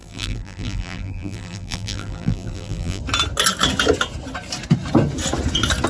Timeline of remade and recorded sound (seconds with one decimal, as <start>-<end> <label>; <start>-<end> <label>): 0.0-3.0 remade; 3.0-5.9 recorded